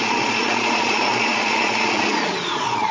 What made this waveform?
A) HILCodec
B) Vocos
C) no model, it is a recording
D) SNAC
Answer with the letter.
B